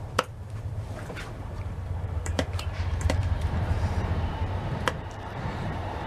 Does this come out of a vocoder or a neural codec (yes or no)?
yes